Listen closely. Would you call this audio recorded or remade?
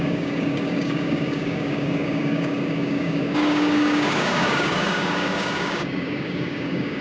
remade